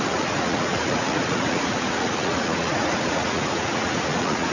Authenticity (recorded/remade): remade